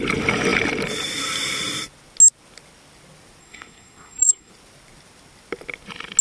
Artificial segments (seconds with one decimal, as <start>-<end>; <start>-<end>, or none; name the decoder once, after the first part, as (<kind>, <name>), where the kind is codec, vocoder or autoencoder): 3.4-4.5 (codec, SNAC)